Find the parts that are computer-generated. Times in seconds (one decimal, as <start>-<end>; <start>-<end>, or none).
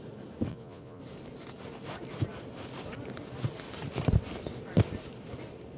0.5-1.0